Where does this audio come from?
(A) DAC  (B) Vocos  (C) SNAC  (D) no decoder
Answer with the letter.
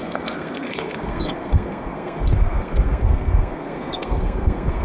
C